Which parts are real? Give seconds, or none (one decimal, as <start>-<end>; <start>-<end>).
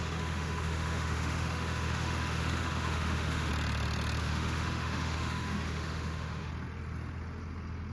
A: 3.5-4.2; 6.5-7.9